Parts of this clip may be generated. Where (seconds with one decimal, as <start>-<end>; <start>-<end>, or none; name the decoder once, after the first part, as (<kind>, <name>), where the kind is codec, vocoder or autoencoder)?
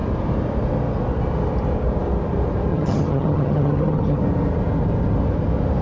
2.7-4.2 (vocoder, HiFi-GAN)